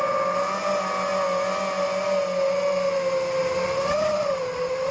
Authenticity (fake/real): real